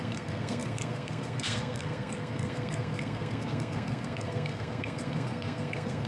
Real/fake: fake